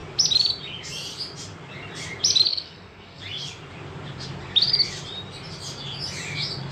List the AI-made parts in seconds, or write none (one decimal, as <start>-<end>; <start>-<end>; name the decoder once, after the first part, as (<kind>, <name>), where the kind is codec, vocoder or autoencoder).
2.5-3.2 (codec, SNAC)